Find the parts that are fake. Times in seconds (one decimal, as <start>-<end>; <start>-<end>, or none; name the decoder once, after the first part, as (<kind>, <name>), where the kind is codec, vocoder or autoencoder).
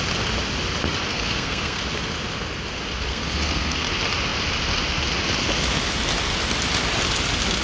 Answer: 1.1-1.8 (codec, SNAC); 3.1-3.9